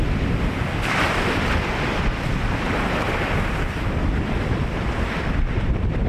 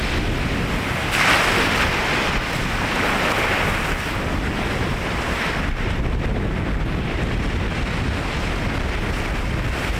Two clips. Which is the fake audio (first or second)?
first